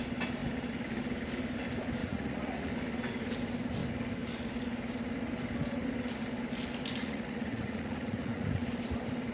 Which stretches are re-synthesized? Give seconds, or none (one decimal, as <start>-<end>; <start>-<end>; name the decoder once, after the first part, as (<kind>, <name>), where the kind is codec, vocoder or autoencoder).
2.0-2.7 (vocoder, Vocos); 7.0-8.6